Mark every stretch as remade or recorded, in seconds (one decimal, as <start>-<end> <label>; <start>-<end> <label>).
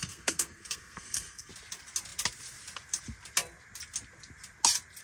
0.0-1.5 remade; 1.5-5.0 recorded